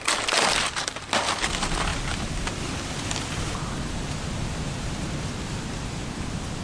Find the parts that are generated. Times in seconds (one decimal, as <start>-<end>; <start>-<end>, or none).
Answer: none